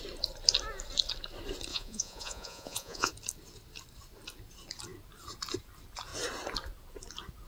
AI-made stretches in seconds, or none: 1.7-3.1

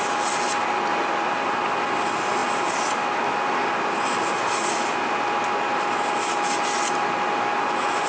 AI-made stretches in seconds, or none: none

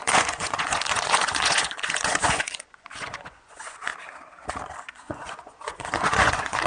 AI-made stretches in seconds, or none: 0.0-3.9; 4.9-6.7

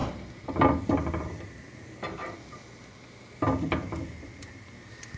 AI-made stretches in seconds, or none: none